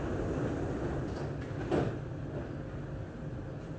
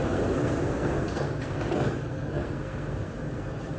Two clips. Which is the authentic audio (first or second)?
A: first